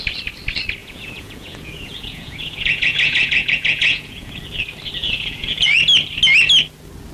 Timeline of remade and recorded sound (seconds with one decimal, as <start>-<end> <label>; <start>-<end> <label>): 0.0-0.8 recorded; 0.8-4.3 remade; 4.3-5.0 recorded; 5.0-5.8 remade; 5.8-7.1 recorded